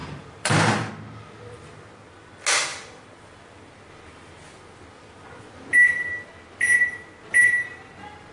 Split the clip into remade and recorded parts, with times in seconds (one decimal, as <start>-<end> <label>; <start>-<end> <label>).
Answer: 0.0-0.9 remade; 0.9-8.3 recorded